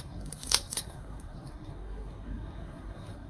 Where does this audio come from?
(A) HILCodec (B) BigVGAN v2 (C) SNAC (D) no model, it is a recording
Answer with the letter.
C